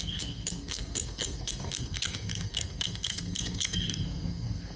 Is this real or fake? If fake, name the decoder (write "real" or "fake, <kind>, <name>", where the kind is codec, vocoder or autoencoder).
fake, codec, SNAC